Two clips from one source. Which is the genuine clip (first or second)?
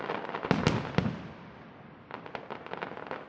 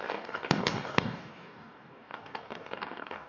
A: first